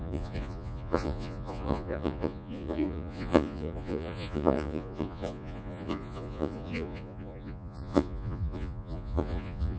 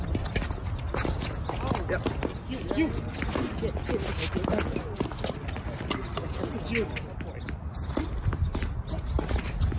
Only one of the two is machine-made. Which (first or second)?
first